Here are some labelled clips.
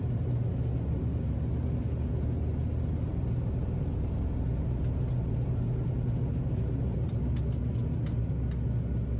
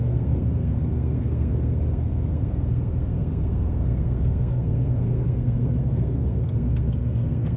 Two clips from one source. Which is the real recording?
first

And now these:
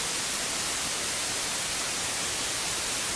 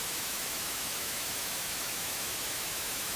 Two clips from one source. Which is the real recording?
first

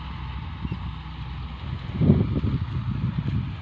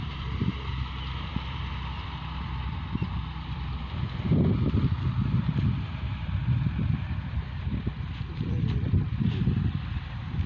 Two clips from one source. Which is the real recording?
first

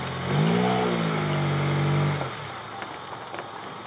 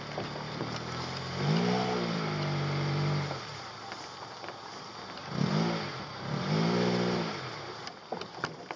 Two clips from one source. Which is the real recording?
first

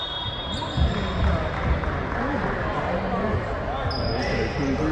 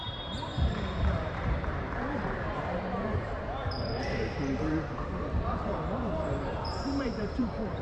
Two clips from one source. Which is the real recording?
first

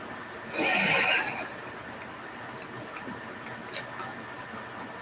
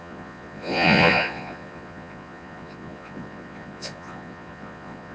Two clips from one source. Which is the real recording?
first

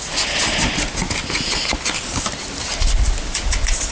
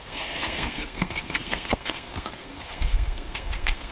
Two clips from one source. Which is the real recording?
first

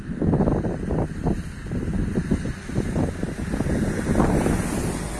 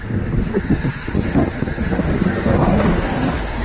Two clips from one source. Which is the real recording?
first